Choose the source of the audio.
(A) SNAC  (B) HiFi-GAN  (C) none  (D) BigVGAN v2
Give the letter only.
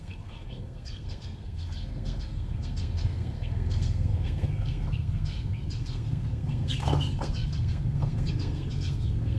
A